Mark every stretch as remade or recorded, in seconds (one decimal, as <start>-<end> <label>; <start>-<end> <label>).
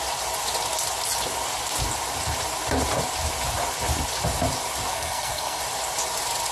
0.0-4.9 recorded; 4.9-5.6 remade; 5.6-6.5 recorded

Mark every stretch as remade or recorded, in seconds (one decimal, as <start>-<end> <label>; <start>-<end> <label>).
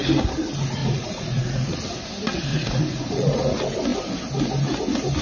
0.0-0.8 recorded; 0.8-2.0 remade; 2.0-2.5 recorded; 2.5-3.4 remade; 3.4-5.2 recorded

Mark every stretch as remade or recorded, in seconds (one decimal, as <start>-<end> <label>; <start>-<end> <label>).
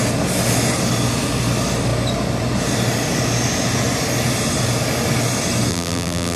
0.0-5.7 recorded; 5.7-6.4 remade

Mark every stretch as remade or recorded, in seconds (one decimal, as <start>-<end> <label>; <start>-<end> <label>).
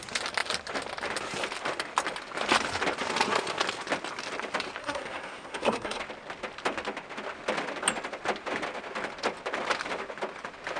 0.0-4.8 recorded; 4.8-6.0 remade; 6.0-10.8 recorded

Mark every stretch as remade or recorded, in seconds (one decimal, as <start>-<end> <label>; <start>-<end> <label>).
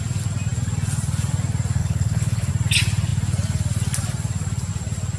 0.0-1.8 recorded; 1.8-2.5 remade; 2.5-5.2 recorded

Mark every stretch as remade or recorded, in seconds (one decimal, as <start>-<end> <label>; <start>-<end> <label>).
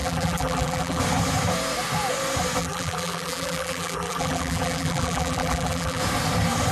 0.0-1.0 remade; 1.0-2.6 recorded; 2.6-6.0 remade; 6.0-6.7 recorded